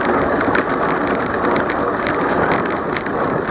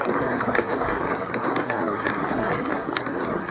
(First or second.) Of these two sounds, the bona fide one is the first